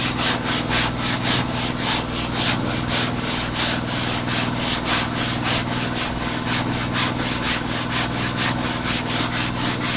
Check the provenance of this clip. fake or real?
real